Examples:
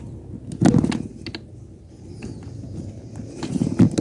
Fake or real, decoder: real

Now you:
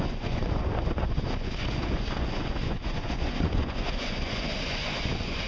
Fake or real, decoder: fake, vocoder, Vocos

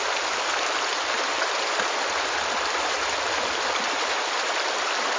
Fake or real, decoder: real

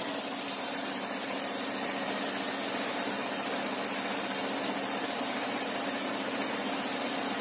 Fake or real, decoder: real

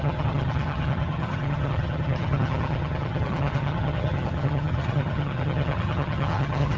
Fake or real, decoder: fake, vocoder, HiFi-GAN